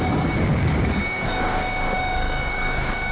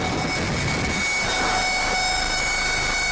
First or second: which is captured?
second